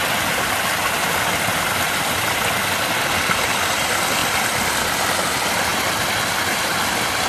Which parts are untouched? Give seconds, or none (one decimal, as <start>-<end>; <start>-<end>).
0.0-7.3